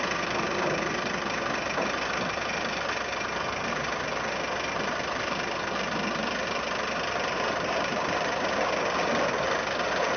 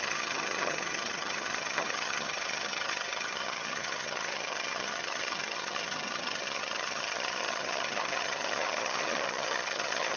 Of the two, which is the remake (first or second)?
second